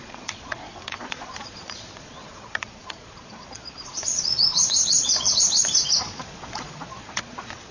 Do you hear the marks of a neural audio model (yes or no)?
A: yes